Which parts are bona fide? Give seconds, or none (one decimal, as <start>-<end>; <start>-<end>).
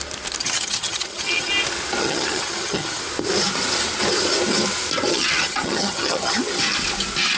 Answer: 0.0-0.4; 1.5-2.0; 3.0-5.1; 6.3-7.4